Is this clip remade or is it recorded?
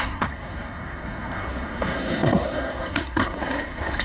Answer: remade